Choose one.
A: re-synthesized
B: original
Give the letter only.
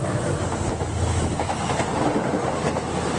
B